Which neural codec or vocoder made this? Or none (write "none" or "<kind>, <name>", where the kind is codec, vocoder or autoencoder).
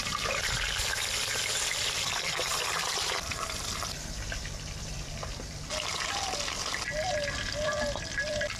vocoder, BigVGAN v2